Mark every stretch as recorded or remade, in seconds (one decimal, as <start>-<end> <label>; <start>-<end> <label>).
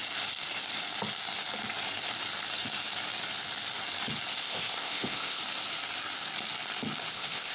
0.0-4.4 recorded; 4.4-5.4 remade; 5.4-7.1 recorded; 7.1-7.5 remade